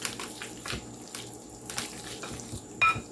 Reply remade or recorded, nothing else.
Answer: recorded